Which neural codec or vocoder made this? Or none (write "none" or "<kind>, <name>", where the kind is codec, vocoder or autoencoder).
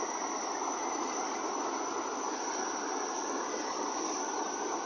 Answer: none